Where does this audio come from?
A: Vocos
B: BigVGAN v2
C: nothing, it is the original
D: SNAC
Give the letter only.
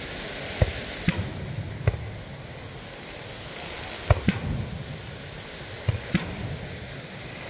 C